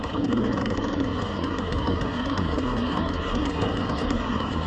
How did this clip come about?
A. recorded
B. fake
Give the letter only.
B